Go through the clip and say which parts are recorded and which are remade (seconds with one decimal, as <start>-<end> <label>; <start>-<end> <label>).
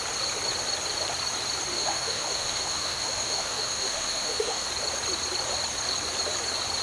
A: 0.0-1.7 recorded; 1.7-4.7 remade; 4.7-6.8 recorded